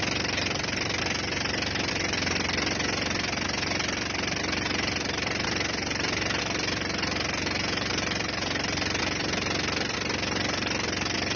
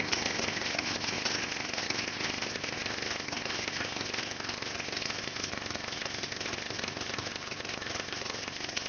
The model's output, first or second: second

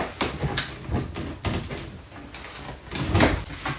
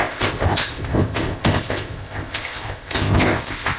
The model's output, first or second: second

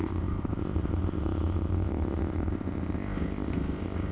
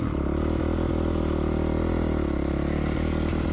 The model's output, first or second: first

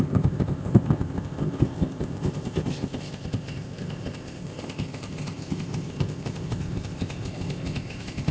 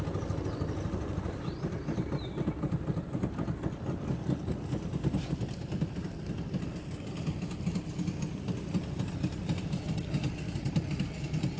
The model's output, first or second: first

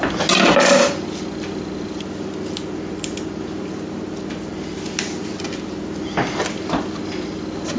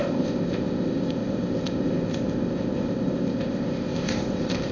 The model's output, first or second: second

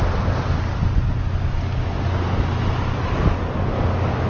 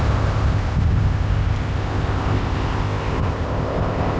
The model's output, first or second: second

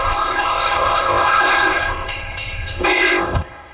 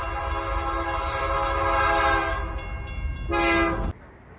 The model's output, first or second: first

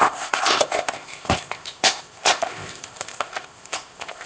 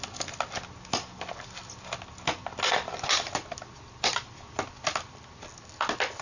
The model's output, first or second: first